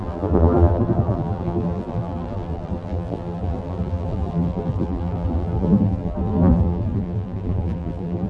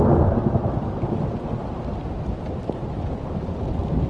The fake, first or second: first